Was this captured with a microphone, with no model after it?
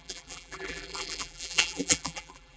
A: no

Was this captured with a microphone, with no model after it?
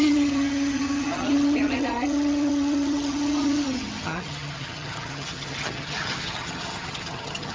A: no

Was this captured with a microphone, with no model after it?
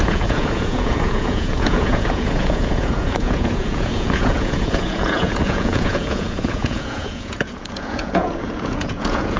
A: no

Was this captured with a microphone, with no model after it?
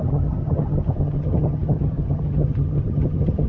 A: no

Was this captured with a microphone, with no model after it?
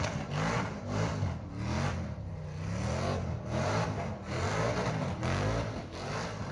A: yes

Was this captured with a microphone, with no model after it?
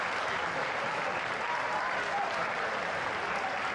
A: yes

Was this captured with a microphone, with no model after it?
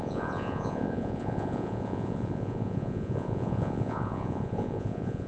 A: no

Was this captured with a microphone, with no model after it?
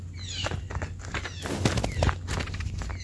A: yes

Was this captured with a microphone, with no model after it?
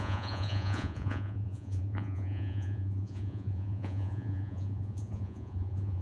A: no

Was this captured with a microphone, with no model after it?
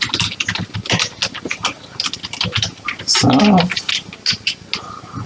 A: yes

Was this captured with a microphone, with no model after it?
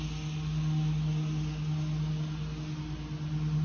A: yes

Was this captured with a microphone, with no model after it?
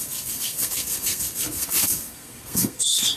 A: no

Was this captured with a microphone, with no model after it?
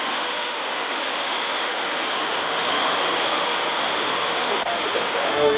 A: no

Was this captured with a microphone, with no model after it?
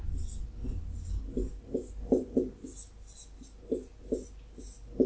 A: yes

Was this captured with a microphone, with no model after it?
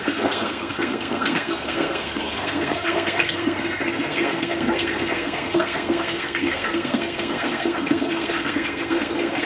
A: no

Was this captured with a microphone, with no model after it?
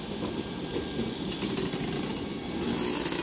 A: yes